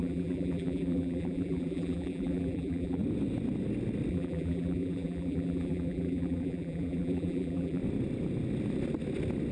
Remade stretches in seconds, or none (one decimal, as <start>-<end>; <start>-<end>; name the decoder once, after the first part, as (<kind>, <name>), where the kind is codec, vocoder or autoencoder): 0.0-3.0 (vocoder, BigVGAN v2); 4.1-7.8